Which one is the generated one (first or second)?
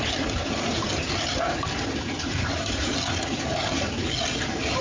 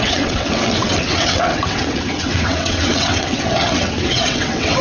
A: second